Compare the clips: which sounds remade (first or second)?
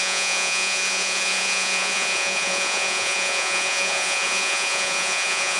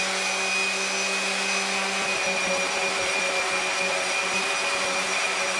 first